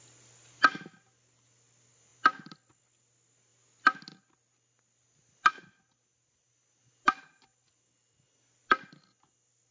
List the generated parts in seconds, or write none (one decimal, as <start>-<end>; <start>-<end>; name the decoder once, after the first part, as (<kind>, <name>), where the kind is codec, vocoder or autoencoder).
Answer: none

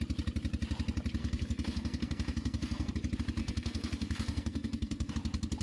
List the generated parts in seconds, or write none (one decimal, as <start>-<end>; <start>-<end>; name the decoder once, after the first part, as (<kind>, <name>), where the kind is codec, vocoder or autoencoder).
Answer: 1.2-2.9 (codec, SNAC); 3.4-5.1

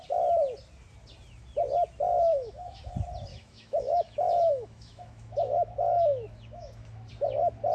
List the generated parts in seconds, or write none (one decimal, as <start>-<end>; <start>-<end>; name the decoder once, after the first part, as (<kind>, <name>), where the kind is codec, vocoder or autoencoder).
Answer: 2.3-2.8 (autoencoder, DAC-VAE); 3.3-7.1

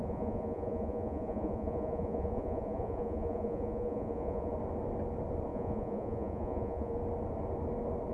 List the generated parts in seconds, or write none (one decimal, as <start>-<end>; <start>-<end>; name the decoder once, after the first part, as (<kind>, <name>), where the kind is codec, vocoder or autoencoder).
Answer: 0.0-4.5 (vocoder, Vocos); 5.5-7.0

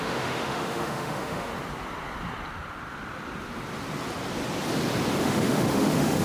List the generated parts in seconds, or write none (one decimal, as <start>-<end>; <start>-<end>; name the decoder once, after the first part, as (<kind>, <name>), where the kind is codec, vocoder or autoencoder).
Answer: 0.0-1.5 (autoencoder, DAC-VAE); 5.2-6.2